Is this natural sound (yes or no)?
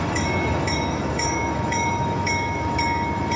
no